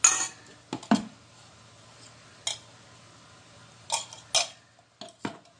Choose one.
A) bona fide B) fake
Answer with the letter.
A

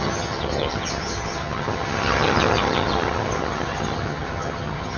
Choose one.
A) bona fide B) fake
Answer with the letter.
B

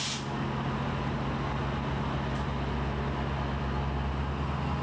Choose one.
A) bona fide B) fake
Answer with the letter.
A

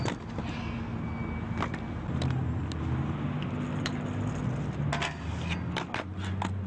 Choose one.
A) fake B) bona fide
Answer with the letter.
B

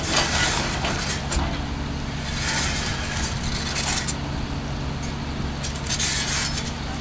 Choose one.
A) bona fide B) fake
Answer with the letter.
A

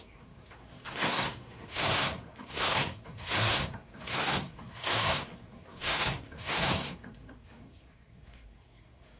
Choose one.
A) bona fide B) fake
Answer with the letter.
B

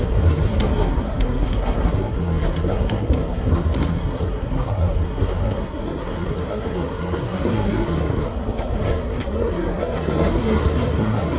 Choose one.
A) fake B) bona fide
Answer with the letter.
A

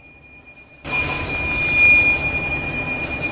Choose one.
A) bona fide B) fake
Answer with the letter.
A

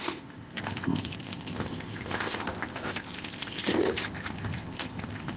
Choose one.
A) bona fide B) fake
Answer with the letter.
B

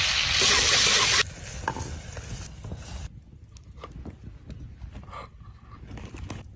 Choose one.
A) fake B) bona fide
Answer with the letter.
B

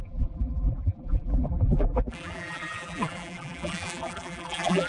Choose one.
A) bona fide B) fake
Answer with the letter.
B